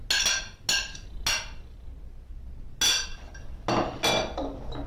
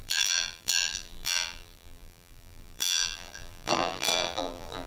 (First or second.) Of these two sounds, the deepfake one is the second